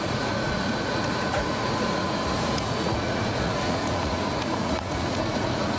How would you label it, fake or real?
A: fake